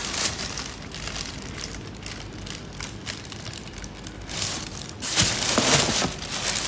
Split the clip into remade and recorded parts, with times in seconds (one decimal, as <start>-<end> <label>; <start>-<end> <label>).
0.0-6.7 recorded